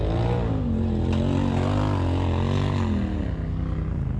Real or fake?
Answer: real